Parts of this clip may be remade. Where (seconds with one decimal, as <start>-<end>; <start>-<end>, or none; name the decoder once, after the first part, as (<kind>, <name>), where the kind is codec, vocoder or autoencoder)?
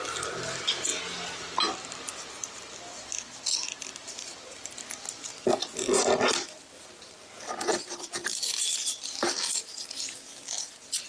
7.7-8.5 (vocoder, BigVGAN v2)